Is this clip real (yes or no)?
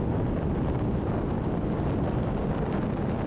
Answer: yes